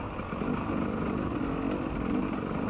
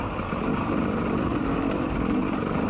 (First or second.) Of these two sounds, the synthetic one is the second